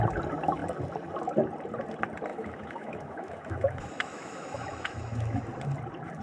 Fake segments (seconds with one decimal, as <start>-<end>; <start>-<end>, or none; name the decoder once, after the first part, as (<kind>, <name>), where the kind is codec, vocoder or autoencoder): 2.3-5.4 (autoencoder, DAC-VAE)